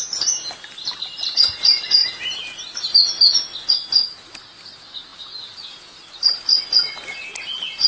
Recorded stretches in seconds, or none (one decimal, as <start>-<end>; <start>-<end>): 0.0-7.9